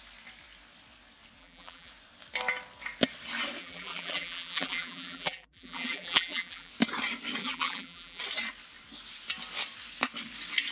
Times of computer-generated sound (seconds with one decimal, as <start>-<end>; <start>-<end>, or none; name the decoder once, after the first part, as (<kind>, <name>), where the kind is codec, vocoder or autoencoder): 1.4-1.9 (vocoder, BigVGAN v2); 3.6-6.7; 7.4-8.2